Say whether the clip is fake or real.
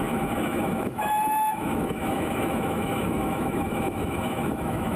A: fake